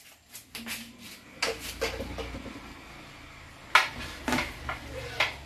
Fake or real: real